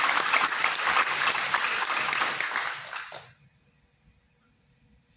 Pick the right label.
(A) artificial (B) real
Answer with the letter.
B